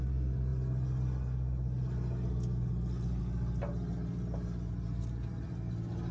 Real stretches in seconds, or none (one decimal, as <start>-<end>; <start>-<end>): 0.0-6.1